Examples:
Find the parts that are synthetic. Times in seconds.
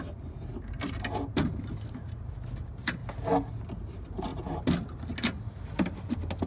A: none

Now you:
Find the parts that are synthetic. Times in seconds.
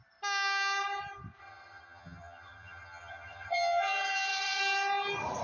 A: 1.4-4.6 (vocoder, HiFi-GAN)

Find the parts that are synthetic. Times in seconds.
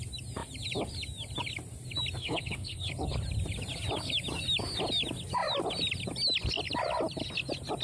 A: 2.2-2.9 (codec, HILCodec)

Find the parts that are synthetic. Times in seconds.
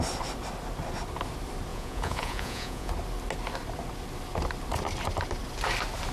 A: 1.7-2.9 (vocoder, Vocos)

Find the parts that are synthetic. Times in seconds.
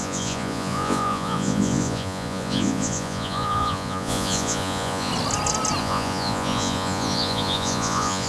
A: 0.0-5.1 (vocoder, Vocos); 5.8-8.3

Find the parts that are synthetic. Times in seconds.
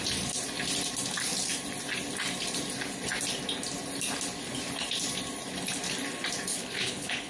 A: 6.5-7.3 (codec, HILCodec)